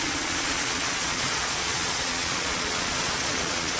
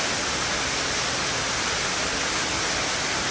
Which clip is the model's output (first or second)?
first